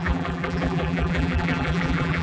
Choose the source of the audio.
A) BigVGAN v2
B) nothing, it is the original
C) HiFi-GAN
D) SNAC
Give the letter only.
A